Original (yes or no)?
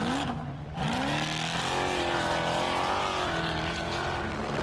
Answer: yes